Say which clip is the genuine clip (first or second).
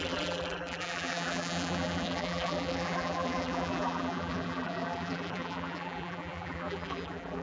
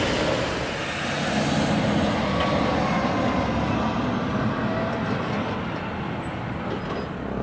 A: second